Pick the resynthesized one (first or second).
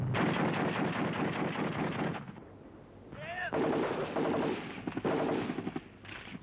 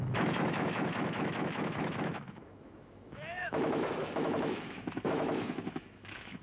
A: second